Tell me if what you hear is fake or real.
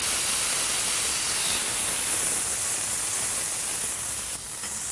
real